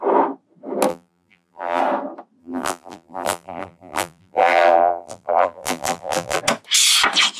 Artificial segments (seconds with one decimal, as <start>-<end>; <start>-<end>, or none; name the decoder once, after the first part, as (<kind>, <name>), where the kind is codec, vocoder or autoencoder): 0.9-1.8 (vocoder, BigVGAN v2); 2.4-6.4